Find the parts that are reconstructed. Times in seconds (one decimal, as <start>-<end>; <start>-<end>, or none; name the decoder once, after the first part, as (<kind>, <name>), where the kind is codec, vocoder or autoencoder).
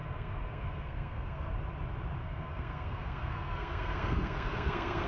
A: 0.0-1.5 (codec, SNAC); 2.2-5.1